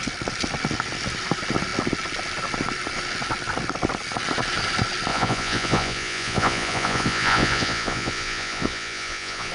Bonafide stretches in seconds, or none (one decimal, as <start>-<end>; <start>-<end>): 0.0-5.1